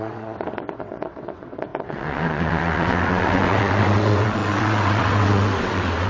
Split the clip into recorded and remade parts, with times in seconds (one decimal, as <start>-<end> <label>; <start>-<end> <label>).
0.0-6.1 remade